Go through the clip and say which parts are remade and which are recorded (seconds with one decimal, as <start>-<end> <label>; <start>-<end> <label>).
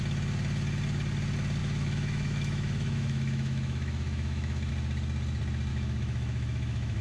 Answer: 0.0-1.6 recorded; 1.6-4.7 remade; 4.7-5.7 recorded; 5.7-7.0 remade